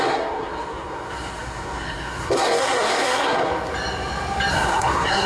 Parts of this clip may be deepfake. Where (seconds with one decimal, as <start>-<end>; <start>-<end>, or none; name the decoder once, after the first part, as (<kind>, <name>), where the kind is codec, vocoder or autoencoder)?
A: 0.0-3.5 (codec, SNAC); 4.5-5.3